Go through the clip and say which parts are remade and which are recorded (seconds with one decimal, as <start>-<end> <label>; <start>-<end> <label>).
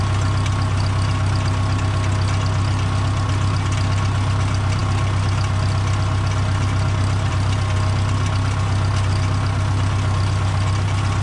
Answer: 0.0-11.2 recorded